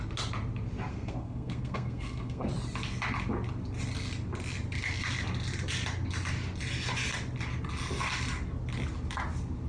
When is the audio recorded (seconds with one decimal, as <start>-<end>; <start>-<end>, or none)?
0.0-0.9; 2.5-9.7

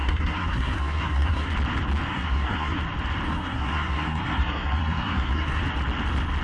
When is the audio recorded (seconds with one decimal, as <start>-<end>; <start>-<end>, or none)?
1.5-2.1; 2.8-3.3; 5.6-6.4

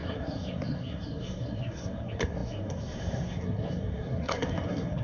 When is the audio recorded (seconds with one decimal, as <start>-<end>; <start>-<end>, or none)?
none